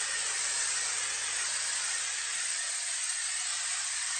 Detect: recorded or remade recorded